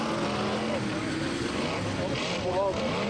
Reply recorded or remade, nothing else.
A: recorded